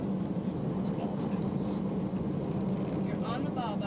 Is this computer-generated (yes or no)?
no